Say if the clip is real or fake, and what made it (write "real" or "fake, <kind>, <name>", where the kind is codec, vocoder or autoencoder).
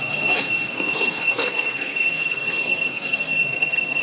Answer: fake, codec, SNAC